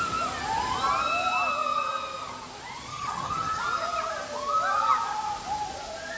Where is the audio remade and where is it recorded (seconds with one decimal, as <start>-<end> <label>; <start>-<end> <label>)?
0.0-2.9 recorded; 2.9-3.6 remade; 3.6-6.2 recorded